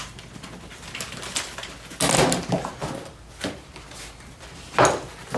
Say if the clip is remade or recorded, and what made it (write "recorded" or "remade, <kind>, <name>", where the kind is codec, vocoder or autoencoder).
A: recorded